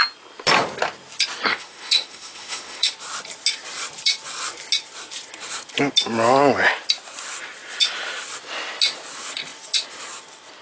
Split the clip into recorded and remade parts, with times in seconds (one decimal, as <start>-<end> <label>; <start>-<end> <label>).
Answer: 0.0-1.5 recorded; 1.5-2.9 remade; 2.9-10.6 recorded